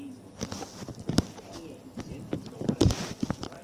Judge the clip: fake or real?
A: real